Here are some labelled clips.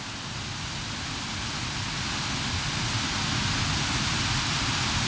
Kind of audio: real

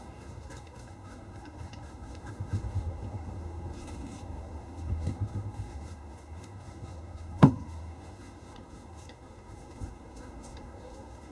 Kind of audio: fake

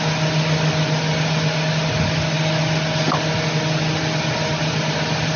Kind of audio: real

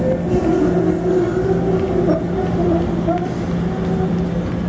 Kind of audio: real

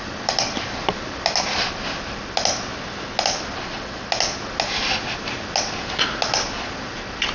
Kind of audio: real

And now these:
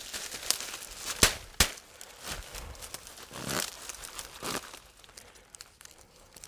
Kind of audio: real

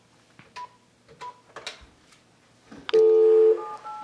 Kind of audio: real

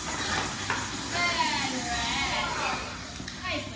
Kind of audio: real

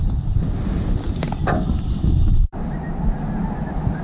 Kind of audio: real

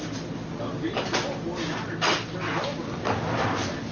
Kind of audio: real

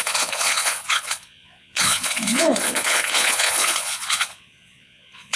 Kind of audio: fake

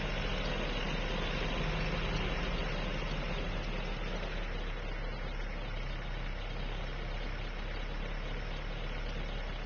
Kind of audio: real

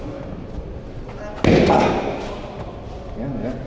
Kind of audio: real